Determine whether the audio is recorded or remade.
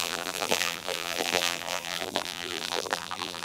remade